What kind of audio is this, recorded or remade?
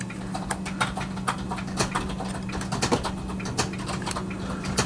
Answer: recorded